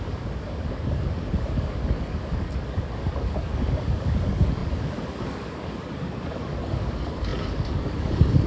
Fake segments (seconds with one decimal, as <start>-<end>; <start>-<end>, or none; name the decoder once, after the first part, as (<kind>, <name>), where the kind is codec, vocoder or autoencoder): 0.0-8.5 (codec, DAC)